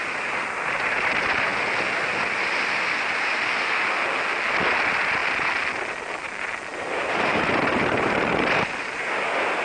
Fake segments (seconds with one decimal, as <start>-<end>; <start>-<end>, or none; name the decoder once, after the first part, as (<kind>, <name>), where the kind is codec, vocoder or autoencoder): none